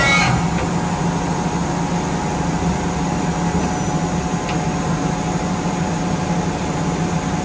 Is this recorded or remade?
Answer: recorded